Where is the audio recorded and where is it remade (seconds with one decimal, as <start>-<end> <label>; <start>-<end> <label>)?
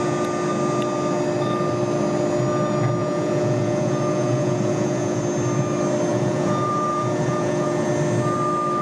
0.0-3.0 recorded; 3.0-5.2 remade; 5.2-6.1 recorded; 6.1-7.9 remade; 7.9-8.8 recorded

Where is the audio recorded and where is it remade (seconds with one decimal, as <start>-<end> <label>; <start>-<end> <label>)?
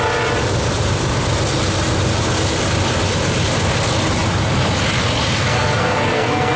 0.0-5.4 recorded; 5.4-6.6 remade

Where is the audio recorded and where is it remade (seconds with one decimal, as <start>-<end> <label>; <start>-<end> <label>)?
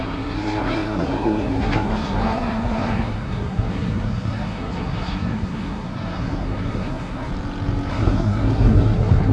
0.0-7.3 remade; 7.3-7.9 recorded; 7.9-9.3 remade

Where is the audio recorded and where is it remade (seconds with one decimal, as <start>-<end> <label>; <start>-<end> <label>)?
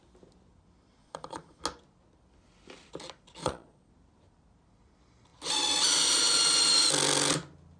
0.0-1.0 recorded; 1.0-1.6 remade; 1.6-3.4 recorded; 3.4-3.9 remade; 3.9-7.8 recorded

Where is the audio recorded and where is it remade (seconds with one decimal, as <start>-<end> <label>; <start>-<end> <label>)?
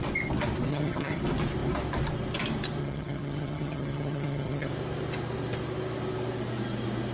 0.0-0.7 recorded; 0.7-1.2 remade; 1.2-2.8 recorded; 2.8-4.7 remade; 4.7-7.1 recorded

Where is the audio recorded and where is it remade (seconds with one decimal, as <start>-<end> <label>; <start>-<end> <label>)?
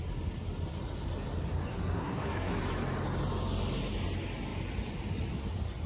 0.0-1.7 recorded; 1.7-2.6 remade; 2.6-5.9 recorded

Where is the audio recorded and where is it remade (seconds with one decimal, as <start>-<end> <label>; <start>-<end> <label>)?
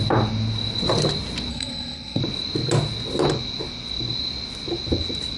0.0-1.5 recorded; 1.5-2.2 remade; 2.2-5.4 recorded